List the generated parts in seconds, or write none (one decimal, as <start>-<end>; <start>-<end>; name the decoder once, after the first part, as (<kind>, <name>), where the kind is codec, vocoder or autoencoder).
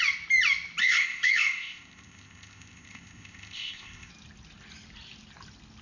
0.8-4.1 (codec, ZipCodec)